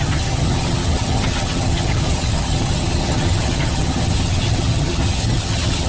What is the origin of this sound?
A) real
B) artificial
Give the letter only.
B